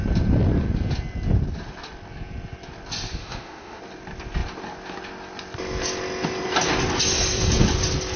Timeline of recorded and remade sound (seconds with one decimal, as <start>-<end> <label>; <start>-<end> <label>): 0.0-3.2 recorded; 3.2-3.8 remade; 3.8-8.2 recorded